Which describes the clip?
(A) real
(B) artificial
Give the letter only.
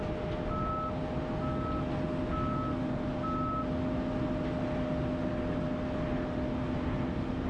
A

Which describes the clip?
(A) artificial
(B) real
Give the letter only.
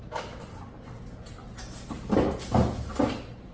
B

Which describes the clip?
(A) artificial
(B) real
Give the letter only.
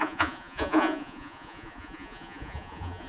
A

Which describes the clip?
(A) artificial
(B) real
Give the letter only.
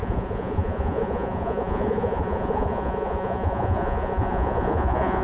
A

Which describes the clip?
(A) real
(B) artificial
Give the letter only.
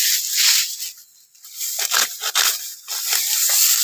A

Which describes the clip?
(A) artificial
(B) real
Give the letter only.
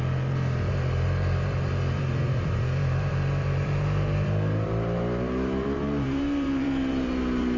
A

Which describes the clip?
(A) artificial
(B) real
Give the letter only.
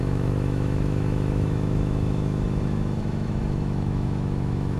A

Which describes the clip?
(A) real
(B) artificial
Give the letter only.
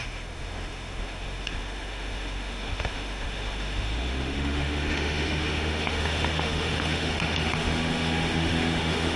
B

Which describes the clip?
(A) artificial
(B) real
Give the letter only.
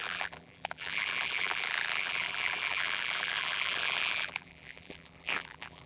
A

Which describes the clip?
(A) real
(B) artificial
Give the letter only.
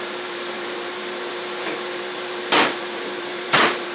B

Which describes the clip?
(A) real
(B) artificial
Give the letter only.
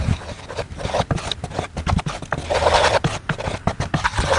A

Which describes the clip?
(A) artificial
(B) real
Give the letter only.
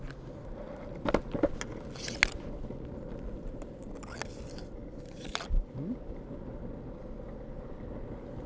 B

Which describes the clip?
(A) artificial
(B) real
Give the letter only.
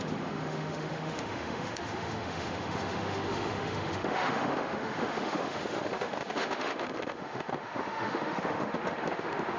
A